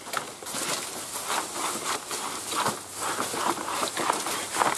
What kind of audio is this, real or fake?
real